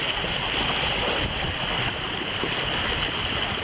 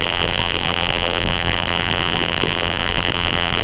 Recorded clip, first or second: first